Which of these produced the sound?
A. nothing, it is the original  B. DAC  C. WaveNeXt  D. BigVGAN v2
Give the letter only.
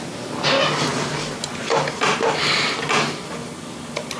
A